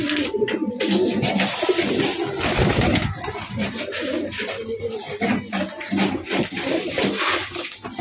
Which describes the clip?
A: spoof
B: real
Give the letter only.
B